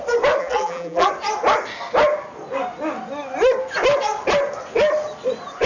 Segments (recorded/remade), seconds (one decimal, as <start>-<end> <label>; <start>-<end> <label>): 0.0-0.4 recorded; 0.4-1.1 remade; 1.1-5.7 recorded